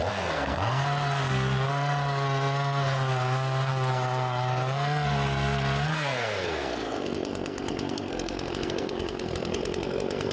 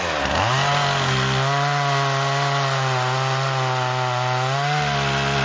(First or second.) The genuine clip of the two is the second